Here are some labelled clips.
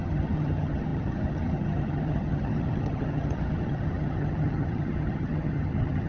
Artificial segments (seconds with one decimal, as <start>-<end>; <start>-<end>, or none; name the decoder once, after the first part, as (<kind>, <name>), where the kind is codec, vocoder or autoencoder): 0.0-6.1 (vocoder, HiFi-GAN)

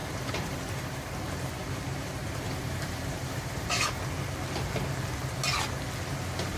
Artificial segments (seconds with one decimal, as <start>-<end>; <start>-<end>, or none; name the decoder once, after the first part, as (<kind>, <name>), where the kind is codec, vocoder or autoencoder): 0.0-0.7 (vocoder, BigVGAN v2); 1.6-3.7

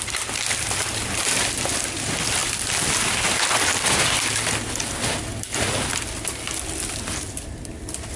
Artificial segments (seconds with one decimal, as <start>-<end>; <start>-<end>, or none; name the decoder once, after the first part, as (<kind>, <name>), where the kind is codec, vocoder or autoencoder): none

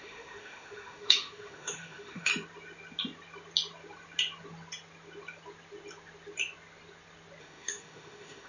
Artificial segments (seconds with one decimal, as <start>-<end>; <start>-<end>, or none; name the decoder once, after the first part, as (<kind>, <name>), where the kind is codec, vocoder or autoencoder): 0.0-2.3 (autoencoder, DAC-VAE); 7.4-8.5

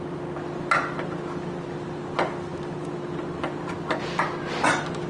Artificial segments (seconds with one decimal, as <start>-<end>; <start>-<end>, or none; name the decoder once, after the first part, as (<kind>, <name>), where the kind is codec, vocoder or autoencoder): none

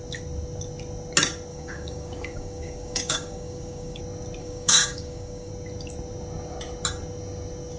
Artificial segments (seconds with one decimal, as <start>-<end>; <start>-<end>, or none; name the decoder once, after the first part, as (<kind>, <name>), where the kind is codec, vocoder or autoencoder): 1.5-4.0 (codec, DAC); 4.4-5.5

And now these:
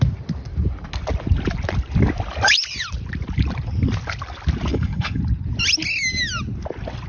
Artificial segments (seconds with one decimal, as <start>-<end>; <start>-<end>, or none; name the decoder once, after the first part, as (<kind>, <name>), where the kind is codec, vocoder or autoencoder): 4.7-5.2 (codec, HILCodec)